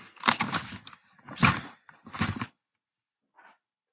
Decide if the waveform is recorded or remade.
remade